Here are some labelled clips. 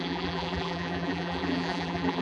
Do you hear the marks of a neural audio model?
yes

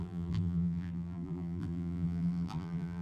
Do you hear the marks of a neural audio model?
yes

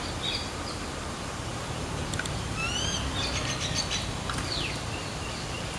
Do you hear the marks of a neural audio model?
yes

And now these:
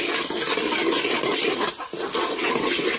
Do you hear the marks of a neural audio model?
no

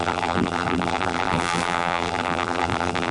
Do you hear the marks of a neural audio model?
yes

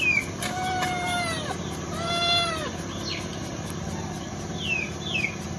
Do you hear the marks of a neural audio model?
yes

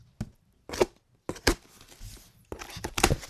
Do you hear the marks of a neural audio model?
no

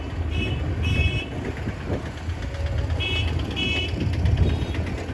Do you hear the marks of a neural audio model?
no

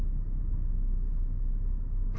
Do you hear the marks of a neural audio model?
no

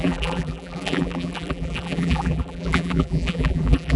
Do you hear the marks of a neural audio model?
yes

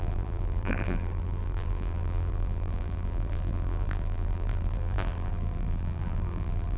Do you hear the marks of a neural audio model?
yes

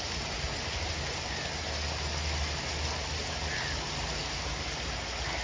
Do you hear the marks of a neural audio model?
no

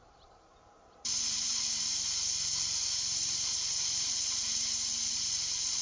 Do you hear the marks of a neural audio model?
yes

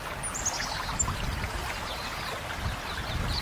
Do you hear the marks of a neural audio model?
no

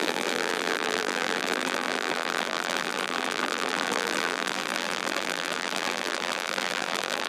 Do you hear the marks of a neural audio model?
yes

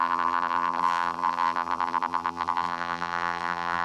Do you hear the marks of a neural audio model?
yes